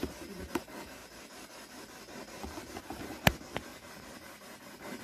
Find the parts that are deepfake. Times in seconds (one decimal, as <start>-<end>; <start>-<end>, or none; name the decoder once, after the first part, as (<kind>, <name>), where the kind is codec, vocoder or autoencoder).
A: 3.7-5.0 (vocoder, BigVGAN v2)